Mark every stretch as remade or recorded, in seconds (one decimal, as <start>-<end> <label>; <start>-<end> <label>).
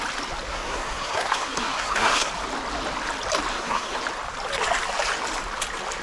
0.0-0.5 recorded; 0.5-2.3 remade; 2.3-3.5 recorded; 3.5-4.0 remade; 4.0-6.0 recorded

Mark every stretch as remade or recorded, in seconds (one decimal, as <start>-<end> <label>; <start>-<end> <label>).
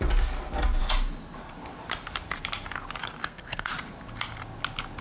0.0-3.2 recorded; 3.2-3.7 remade; 3.7-5.0 recorded